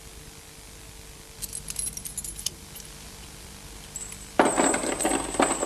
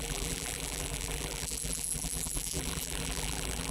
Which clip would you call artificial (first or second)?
second